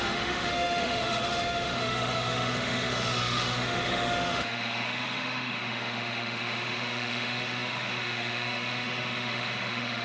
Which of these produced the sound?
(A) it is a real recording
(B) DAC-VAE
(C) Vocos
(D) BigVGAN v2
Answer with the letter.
B